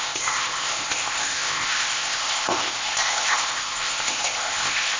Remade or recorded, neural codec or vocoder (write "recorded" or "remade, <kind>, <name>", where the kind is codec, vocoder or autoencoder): remade, codec, ZipCodec